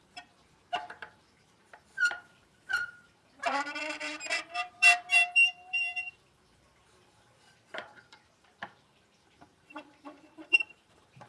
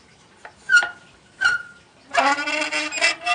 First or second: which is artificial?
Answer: first